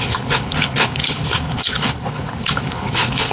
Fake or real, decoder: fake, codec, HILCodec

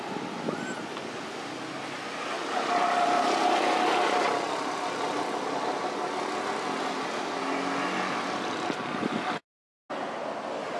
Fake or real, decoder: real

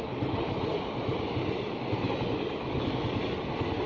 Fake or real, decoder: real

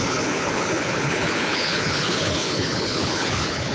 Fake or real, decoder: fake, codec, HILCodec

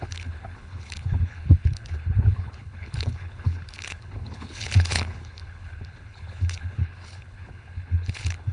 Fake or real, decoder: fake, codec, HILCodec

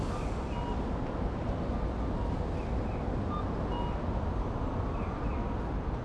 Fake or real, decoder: real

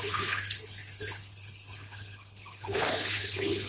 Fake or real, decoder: fake, codec, HILCodec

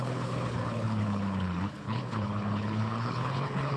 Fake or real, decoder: fake, codec, HILCodec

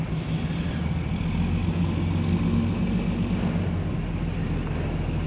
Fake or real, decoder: real